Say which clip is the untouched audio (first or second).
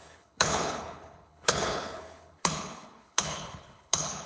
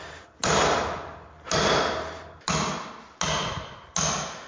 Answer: second